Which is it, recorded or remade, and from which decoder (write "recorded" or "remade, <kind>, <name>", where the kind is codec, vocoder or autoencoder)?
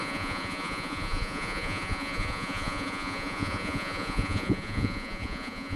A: remade, vocoder, Vocos